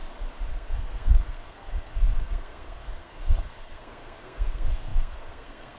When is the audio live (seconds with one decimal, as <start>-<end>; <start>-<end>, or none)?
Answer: 0.0-0.5